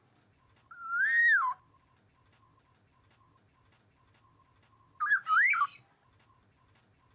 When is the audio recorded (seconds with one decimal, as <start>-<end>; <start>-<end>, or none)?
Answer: 0.0-7.1